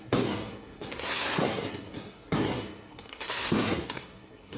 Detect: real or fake fake